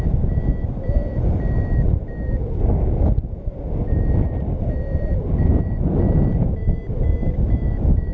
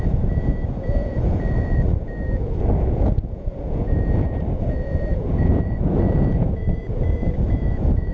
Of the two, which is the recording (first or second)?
first